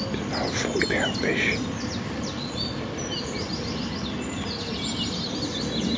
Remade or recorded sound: recorded